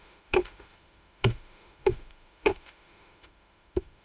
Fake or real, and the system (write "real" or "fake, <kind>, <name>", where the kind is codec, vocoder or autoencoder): fake, autoencoder, DAC-VAE